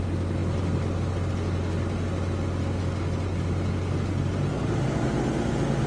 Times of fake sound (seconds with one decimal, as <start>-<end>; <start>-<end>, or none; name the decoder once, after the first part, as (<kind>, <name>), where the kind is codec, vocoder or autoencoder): none